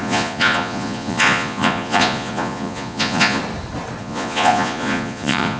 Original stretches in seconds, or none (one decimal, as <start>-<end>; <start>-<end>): 3.4-4.0